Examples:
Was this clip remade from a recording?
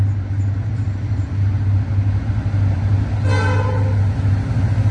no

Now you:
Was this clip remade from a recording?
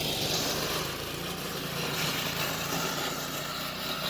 no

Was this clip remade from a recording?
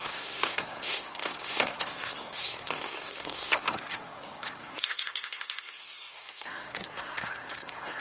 yes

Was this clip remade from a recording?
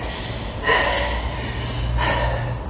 no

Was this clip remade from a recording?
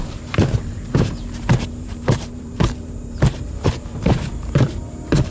yes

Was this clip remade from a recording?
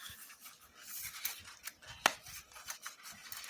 no